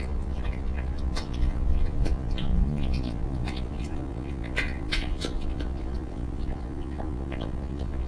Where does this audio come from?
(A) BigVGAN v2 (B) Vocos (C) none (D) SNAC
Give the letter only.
B